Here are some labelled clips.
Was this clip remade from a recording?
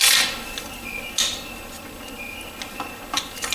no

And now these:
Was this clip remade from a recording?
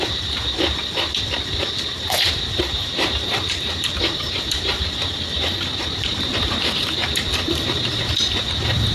yes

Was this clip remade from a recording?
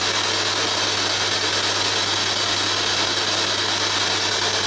no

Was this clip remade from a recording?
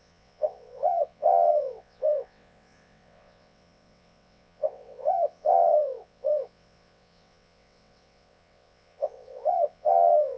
yes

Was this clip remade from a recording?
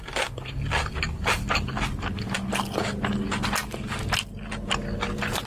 no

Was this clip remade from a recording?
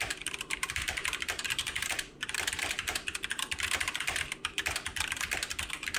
yes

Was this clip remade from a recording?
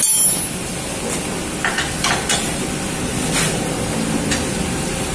no